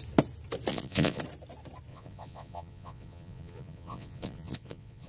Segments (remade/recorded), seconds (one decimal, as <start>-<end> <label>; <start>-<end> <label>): 0.0-0.7 recorded; 0.7-1.2 remade; 1.2-1.9 recorded; 1.9-5.1 remade